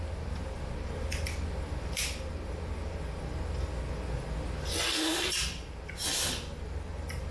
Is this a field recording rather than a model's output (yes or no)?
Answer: yes